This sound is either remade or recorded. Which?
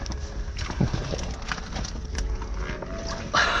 recorded